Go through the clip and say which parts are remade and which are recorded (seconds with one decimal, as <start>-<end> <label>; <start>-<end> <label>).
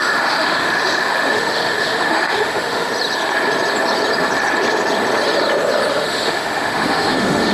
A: 0.0-2.9 remade; 2.9-5.9 recorded; 5.9-7.5 remade